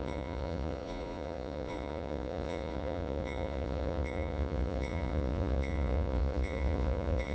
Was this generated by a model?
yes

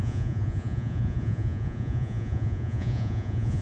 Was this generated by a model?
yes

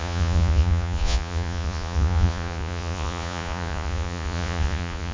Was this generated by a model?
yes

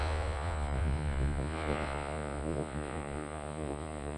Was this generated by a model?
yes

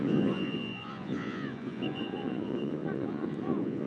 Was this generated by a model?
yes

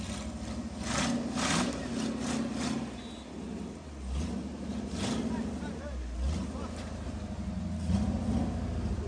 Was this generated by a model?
no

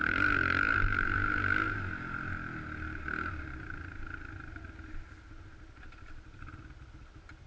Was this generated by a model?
no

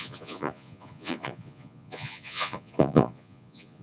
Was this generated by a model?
yes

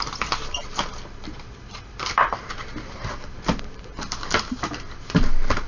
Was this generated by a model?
no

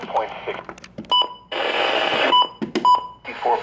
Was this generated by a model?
no